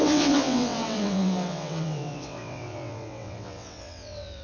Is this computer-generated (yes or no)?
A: yes